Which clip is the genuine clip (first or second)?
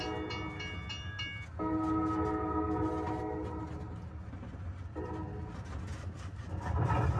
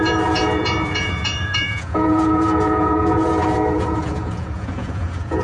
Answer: first